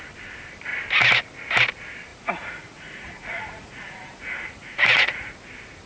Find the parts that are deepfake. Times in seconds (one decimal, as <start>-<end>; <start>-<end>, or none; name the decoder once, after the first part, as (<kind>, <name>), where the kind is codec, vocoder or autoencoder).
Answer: 2.1-5.3 (vocoder, Vocos)